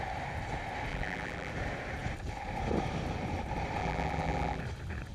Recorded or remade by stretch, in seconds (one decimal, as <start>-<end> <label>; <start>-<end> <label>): 0.0-0.9 recorded; 0.9-1.5 remade; 1.5-3.8 recorded; 3.8-4.6 remade; 4.6-5.1 recorded

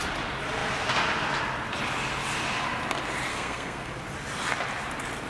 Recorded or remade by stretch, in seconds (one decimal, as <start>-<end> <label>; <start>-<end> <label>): 0.0-3.3 recorded; 3.3-3.9 remade; 3.9-5.3 recorded

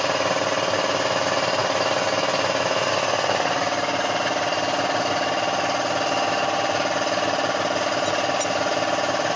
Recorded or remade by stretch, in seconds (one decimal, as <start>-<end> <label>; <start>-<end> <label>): 0.0-9.4 recorded

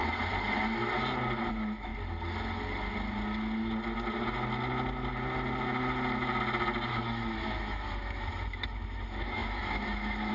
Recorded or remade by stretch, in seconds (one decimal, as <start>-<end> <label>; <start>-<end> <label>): 0.0-1.5 recorded; 1.5-1.9 remade; 1.9-6.9 recorded; 6.9-10.3 remade